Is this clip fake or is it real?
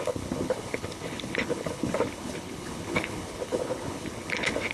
fake